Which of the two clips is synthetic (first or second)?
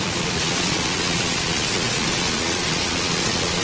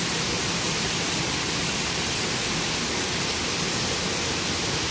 first